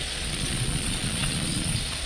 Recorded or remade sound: remade